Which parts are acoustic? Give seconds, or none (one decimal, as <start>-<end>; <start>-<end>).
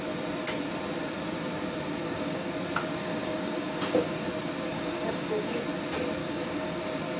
0.0-2.0; 2.5-3.0; 4.3-4.7; 5.6-6.2; 6.8-7.2